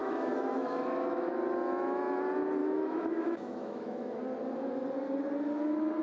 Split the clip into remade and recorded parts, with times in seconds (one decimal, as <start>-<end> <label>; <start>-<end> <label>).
0.0-1.3 remade; 1.3-2.6 recorded; 2.6-4.2 remade; 4.2-6.0 recorded